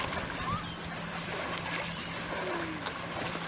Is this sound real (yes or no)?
yes